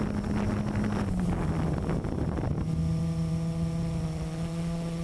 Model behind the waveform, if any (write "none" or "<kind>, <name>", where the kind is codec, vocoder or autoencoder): none